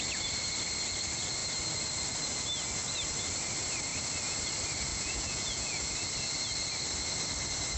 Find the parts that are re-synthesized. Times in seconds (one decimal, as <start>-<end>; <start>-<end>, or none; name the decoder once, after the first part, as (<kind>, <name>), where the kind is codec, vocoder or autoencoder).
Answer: 4.9-5.9 (vocoder, Vocos)